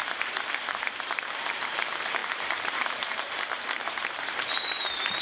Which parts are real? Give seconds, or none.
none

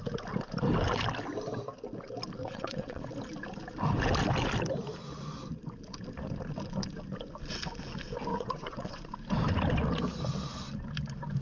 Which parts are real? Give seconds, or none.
0.0-2.4; 3.0-8.3; 9.0-11.4

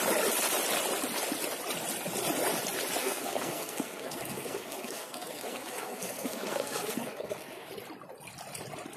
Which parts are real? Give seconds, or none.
0.0-3.0; 7.7-9.0

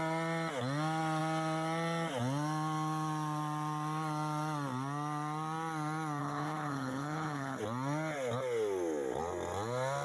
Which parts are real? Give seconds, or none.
0.0-6.2; 7.6-10.0

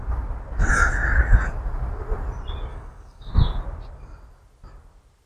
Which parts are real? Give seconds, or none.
0.0-2.7; 3.3-5.3

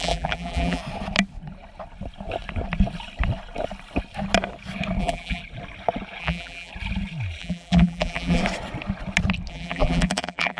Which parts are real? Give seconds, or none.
0.8-5.0; 5.4-6.2; 6.7-7.4; 8.4-9.5

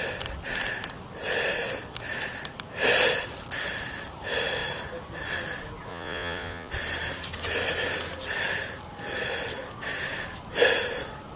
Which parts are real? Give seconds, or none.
0.0-5.9; 6.7-11.4